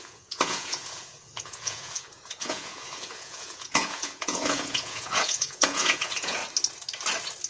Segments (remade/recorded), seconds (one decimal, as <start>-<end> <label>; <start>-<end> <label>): 0.0-6.4 remade; 6.4-7.5 recorded